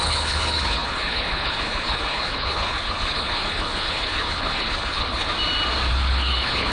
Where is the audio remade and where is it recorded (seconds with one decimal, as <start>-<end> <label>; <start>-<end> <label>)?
0.0-5.3 remade; 5.3-5.9 recorded; 5.9-6.7 remade